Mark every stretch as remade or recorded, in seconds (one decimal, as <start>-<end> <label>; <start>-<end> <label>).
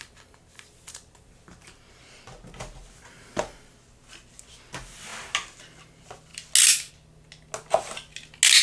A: 0.0-8.6 recorded